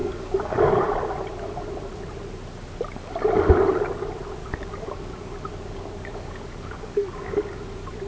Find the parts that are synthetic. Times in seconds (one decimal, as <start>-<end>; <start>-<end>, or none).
0.0-0.7; 4.4-7.6